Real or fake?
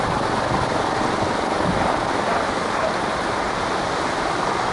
real